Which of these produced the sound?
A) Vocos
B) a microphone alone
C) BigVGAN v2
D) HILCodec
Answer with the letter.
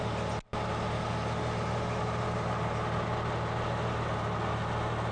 B